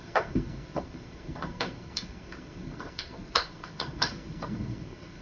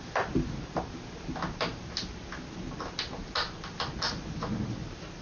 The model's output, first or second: first